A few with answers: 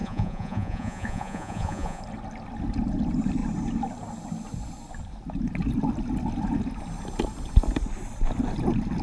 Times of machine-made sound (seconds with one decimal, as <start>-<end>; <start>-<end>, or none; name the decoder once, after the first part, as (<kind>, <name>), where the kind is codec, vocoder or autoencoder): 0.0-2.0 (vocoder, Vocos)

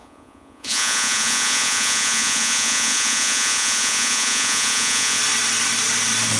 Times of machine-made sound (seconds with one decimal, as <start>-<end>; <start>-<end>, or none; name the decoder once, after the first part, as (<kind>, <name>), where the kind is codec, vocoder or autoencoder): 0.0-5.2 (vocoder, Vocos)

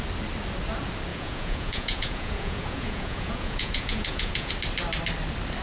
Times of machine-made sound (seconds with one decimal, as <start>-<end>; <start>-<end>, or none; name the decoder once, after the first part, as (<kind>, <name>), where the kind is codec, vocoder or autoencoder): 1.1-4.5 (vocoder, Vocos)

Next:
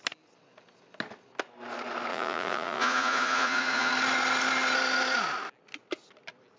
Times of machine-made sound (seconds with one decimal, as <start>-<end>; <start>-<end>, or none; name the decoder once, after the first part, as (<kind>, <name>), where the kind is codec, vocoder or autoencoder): 2.1-3.9 (vocoder, Vocos)

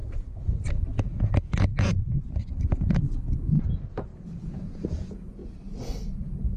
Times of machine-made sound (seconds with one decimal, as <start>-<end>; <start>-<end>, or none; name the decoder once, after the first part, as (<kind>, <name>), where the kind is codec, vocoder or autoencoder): 0.8-4.1 (vocoder, Vocos); 4.6-5.4

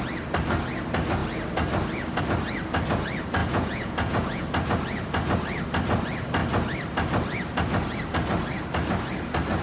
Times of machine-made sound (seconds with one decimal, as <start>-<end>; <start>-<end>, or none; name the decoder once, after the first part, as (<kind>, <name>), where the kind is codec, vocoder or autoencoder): 3.4-4.4 (vocoder, Vocos)